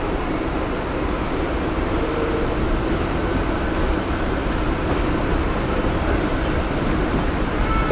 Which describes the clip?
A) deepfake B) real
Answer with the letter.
A